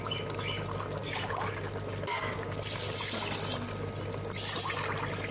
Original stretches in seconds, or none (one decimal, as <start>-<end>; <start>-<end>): 0.0-5.3